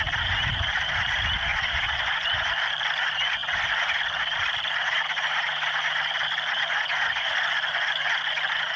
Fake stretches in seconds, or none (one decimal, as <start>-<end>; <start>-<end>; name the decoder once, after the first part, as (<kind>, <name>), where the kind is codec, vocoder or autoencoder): 1.5-2.5 (vocoder, Vocos)